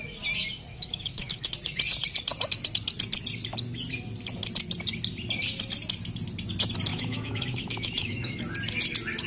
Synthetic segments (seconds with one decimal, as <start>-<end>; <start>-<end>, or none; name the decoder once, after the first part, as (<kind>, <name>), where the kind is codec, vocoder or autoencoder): 0.7-1.5 (autoencoder, DAC-VAE); 6.9-8.4